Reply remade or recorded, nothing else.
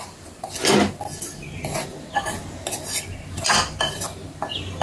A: recorded